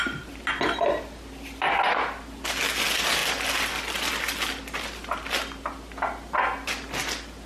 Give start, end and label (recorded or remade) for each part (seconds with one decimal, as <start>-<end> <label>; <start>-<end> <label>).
0.0-7.5 recorded